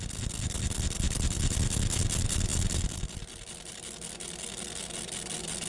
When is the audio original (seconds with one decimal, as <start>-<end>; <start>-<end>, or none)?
0.0-5.7